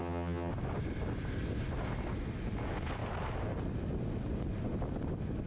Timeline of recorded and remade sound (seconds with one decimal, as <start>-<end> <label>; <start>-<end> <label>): 0.0-0.5 remade; 0.5-5.5 recorded